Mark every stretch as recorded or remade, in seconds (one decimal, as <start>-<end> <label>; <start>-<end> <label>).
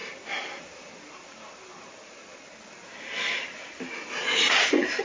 0.0-5.0 recorded